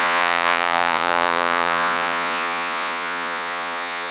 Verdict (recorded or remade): remade